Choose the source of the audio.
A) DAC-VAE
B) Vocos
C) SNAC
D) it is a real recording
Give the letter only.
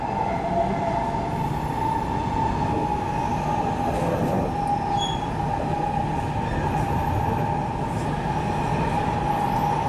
D